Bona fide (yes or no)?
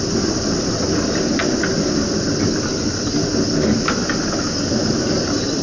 yes